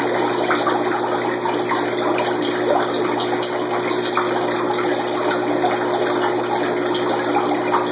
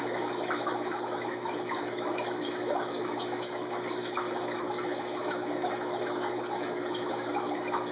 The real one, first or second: first